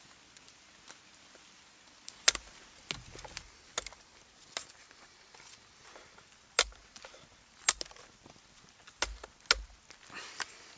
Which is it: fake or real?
real